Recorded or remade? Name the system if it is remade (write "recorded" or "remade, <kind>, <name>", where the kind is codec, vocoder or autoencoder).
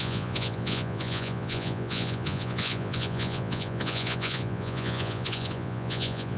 remade, vocoder, Vocos